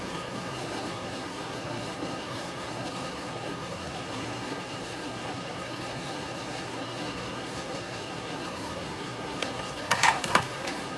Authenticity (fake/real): fake